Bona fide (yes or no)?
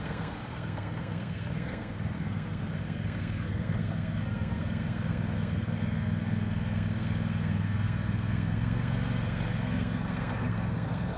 no